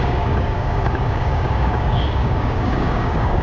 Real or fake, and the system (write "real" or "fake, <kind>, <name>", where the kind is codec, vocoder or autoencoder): fake, codec, DAC